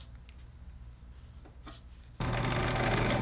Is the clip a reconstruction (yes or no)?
no